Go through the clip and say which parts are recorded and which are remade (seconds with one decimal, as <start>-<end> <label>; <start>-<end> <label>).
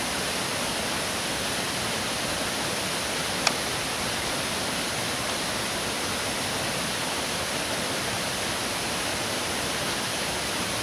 0.0-0.5 recorded; 0.5-2.2 remade; 2.2-9.1 recorded; 9.1-9.7 remade; 9.7-10.8 recorded